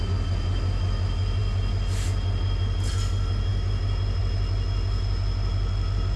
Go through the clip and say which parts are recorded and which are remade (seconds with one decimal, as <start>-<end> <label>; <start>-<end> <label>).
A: 0.0-6.2 recorded